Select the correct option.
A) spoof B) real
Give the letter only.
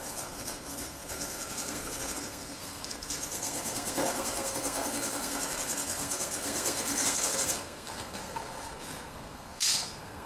A